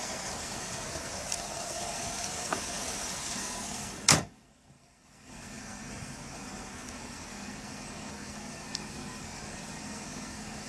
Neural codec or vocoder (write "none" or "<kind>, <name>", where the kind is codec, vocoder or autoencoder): codec, SNAC